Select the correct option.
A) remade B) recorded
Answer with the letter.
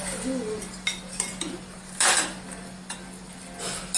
B